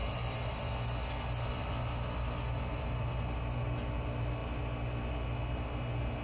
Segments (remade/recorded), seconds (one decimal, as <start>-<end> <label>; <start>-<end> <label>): 0.0-6.2 recorded